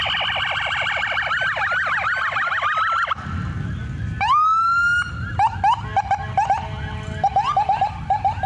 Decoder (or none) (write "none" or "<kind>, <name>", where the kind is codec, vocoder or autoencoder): none